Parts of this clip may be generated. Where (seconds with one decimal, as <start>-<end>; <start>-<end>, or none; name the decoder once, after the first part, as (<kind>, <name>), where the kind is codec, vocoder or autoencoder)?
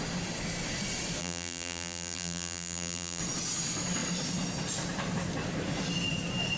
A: 1.2-3.2 (vocoder, BigVGAN v2)